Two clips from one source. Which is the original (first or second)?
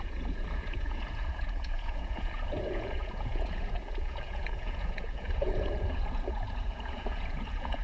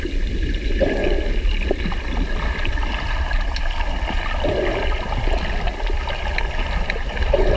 second